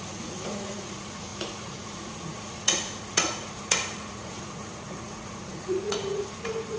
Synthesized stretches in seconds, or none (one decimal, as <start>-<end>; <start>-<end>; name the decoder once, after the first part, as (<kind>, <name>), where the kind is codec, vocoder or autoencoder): 0.0-6.8 (vocoder, Vocos)